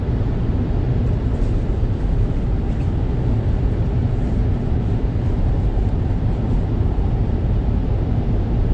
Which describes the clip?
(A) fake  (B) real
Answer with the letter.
A